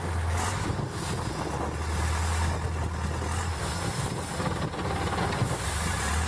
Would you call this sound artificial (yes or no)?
no